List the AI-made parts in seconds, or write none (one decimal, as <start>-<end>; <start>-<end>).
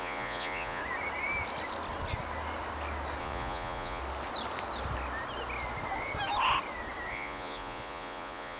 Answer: 0.0-0.8; 3.2-4.0; 7.1-8.6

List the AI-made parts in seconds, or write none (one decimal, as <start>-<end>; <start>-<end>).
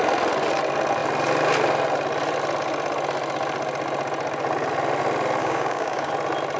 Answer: 5.4-6.1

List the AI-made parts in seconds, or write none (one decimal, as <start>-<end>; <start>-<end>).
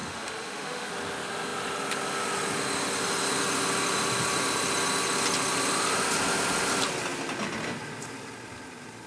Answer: 0.0-0.9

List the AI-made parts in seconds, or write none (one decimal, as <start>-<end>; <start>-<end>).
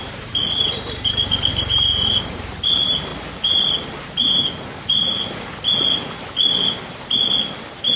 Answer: 0.0-1.5; 2.2-3.1; 6.7-8.0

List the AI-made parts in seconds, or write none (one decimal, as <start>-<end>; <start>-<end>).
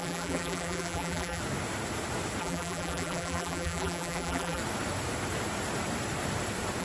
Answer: 0.0-1.4; 2.4-4.6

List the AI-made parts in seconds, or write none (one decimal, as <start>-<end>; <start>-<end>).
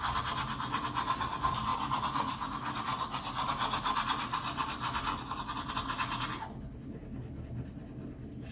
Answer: none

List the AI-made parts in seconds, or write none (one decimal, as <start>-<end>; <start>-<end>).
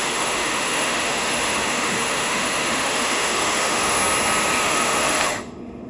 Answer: 0.0-4.0; 4.6-5.9